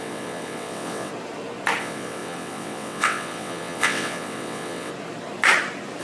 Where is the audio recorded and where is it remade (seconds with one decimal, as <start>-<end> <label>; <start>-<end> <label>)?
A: 0.0-1.1 remade; 1.1-1.8 recorded; 1.8-4.9 remade; 4.9-6.0 recorded

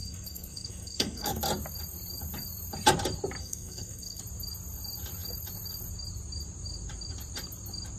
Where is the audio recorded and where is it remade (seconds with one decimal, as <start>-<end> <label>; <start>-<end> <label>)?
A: 0.0-1.4 remade; 1.4-3.4 recorded; 3.4-4.2 remade; 4.2-8.0 recorded